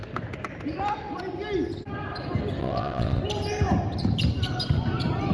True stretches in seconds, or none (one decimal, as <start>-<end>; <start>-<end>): 0.0-2.6; 3.2-5.3